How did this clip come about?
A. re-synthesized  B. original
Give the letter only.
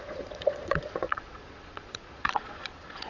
A